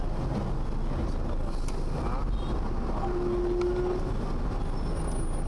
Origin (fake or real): real